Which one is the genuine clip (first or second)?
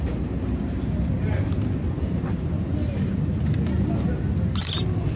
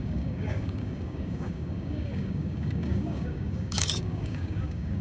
first